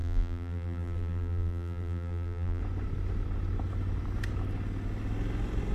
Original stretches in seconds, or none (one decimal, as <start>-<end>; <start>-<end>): 2.6-5.7